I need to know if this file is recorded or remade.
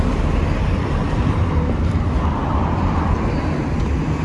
recorded